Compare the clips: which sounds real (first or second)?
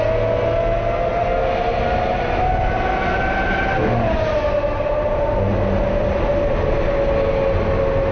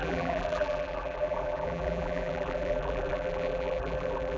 first